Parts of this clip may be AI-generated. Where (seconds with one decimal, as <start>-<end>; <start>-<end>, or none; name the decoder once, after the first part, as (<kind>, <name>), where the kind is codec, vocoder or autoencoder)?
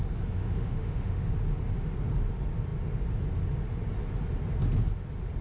0.4-1.3 (autoencoder, DAC-VAE)